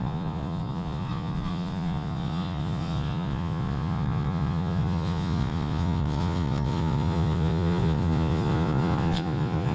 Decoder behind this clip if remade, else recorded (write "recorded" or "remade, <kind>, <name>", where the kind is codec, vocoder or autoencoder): remade, vocoder, Vocos